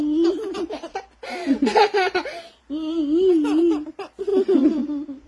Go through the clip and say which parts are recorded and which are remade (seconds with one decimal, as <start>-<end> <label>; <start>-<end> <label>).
0.0-5.3 recorded